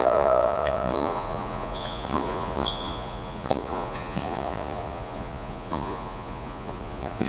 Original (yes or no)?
no